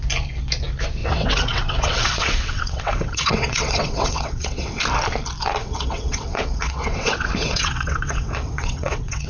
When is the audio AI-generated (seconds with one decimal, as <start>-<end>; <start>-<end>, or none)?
1.0-4.8; 5.6-9.3